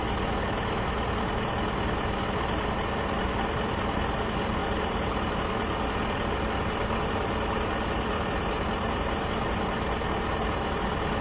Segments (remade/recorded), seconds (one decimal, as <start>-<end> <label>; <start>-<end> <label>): 0.0-4.6 recorded; 4.6-5.4 remade; 5.4-11.2 recorded